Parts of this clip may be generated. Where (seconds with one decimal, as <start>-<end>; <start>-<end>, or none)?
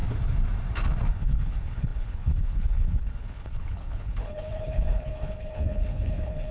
1.1-6.5